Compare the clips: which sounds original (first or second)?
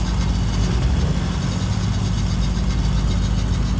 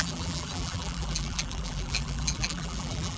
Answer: first